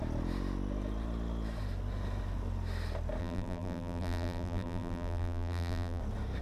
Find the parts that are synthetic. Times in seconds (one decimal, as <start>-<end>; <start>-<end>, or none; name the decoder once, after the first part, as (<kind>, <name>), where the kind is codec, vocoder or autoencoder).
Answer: 3.2-6.0 (vocoder, BigVGAN v2)